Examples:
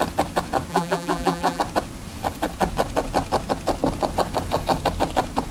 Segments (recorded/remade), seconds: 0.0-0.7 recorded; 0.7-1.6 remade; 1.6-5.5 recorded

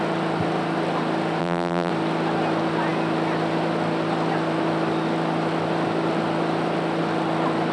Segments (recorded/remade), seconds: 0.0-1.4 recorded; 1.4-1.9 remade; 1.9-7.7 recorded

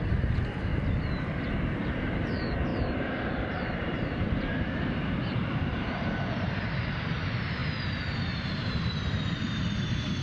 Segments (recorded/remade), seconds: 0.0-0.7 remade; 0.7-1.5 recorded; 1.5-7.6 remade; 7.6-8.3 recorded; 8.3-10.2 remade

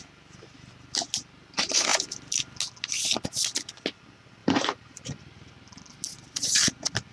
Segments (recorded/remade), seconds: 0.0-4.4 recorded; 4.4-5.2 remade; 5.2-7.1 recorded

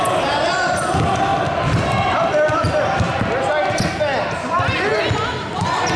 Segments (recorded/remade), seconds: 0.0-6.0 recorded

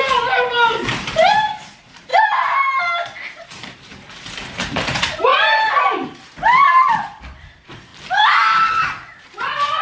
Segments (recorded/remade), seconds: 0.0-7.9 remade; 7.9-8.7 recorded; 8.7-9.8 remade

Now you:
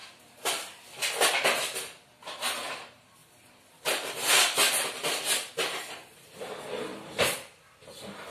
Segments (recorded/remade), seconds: 0.0-3.2 recorded; 3.2-7.7 remade; 7.7-8.3 recorded